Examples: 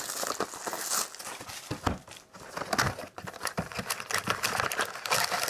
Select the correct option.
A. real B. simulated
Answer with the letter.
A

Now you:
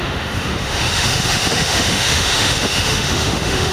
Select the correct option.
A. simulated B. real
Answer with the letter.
A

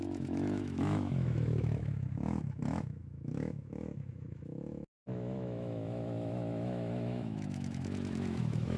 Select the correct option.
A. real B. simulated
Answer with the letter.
B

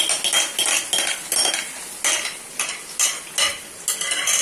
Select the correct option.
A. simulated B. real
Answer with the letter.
B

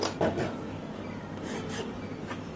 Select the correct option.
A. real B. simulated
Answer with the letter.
A